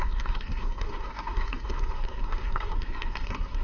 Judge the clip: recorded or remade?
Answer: remade